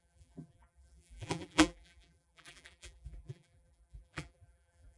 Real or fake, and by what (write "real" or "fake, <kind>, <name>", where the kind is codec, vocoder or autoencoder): fake, vocoder, BigVGAN v2